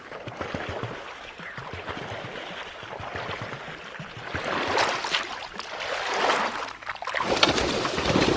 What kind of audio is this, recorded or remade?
recorded